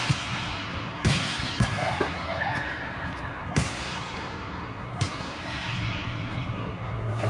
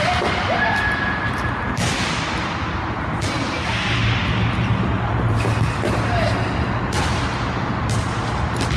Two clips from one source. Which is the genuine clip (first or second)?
second